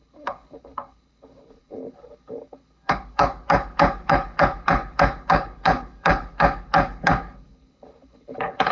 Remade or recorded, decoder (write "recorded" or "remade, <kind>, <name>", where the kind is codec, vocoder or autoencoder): remade, codec, HILCodec